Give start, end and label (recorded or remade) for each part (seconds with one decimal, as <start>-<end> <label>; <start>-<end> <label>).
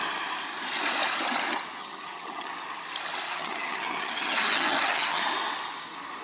0.0-1.8 recorded; 1.8-2.5 remade; 2.5-3.3 recorded; 3.3-5.2 remade; 5.2-6.2 recorded